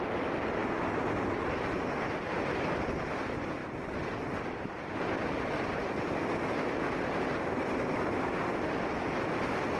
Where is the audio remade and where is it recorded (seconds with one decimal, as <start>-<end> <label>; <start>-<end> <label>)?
0.0-3.6 recorded; 3.6-4.4 remade; 4.4-5.8 recorded; 5.8-7.0 remade; 7.0-9.8 recorded